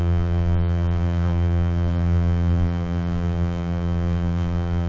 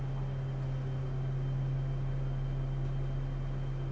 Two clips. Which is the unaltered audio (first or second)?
second